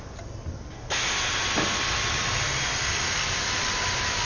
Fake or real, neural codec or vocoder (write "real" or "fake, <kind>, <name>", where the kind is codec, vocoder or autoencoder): real